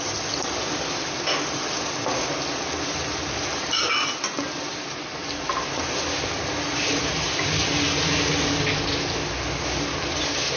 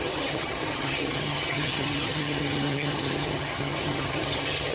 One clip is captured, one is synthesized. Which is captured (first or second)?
first